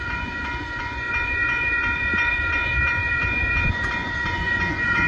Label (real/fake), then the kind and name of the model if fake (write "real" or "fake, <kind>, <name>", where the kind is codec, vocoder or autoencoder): fake, vocoder, Vocos